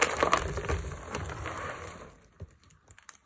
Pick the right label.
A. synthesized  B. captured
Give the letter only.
A